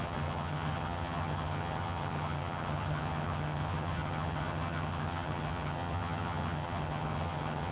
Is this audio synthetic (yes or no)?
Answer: yes